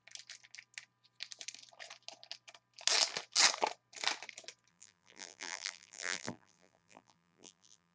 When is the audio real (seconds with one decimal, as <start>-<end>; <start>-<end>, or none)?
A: 0.0-4.7